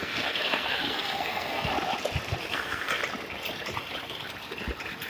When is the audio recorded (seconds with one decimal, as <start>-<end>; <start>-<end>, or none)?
1.7-2.4; 3.0-5.1

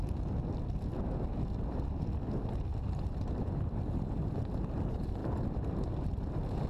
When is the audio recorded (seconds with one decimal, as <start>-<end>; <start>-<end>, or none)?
0.0-6.7